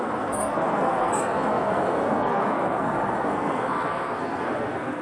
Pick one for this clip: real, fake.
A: fake